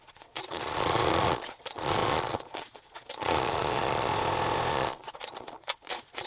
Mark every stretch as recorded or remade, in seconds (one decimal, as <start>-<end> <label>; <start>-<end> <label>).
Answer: 0.0-4.1 remade; 4.1-4.7 recorded; 4.7-6.3 remade